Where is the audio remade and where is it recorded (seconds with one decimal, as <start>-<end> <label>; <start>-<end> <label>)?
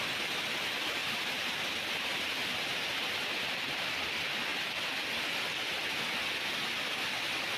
0.0-1.0 recorded; 1.0-4.0 remade; 4.0-7.6 recorded